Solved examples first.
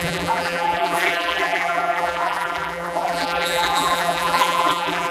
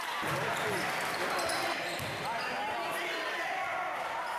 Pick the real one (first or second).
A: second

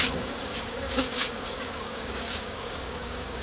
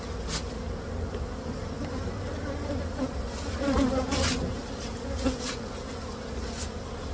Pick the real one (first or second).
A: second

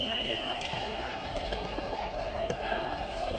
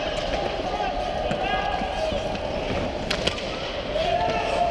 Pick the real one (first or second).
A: second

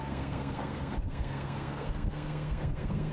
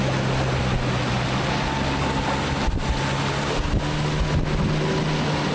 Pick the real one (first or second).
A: second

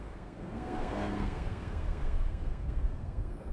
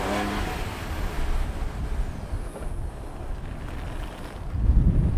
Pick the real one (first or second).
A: second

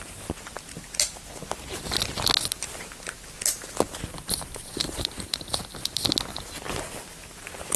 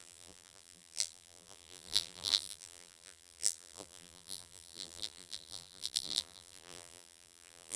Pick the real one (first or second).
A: first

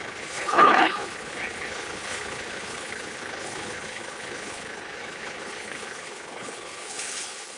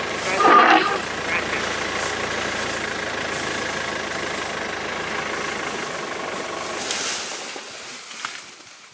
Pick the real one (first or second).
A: second